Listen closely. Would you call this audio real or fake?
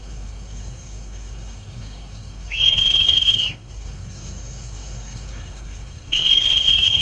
fake